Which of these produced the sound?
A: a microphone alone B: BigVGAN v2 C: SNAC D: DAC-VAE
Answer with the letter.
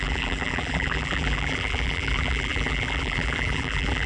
B